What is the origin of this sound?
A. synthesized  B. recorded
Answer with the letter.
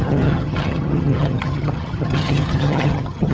A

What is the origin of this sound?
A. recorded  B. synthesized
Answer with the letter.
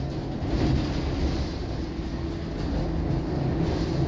A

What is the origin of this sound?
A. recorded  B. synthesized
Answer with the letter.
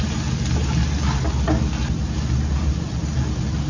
A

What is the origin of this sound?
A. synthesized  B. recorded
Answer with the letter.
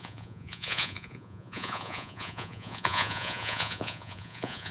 A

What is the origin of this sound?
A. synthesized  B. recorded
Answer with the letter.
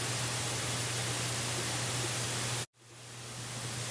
B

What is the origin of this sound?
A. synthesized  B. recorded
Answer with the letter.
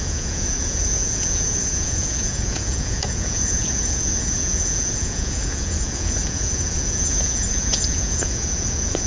A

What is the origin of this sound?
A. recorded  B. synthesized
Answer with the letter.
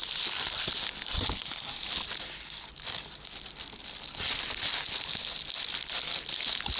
A